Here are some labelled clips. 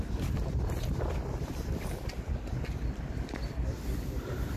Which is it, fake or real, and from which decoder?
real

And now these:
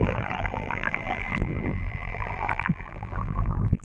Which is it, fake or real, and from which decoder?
fake, vocoder, BigVGAN v2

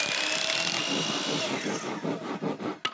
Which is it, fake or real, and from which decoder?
real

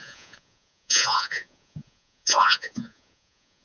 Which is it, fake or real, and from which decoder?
fake, vocoder, Vocos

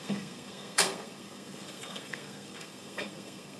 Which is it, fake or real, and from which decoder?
fake, codec, SNAC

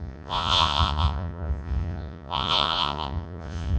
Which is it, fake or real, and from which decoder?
fake, vocoder, Vocos